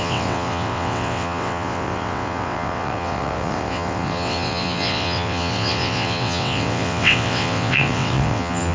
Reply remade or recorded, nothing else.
remade